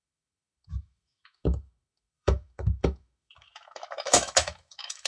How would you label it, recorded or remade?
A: remade